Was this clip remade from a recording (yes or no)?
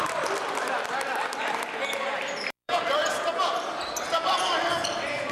yes